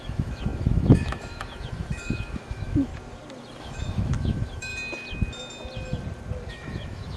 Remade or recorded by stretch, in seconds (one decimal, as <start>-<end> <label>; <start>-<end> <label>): 0.0-2.9 remade; 2.9-3.6 recorded; 3.6-4.7 remade; 4.7-6.5 recorded; 6.5-7.2 remade